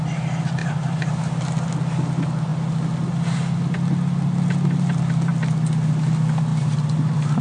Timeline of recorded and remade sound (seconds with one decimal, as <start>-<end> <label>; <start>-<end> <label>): 0.0-0.6 recorded; 0.6-1.1 remade; 1.1-6.5 recorded; 6.5-7.4 remade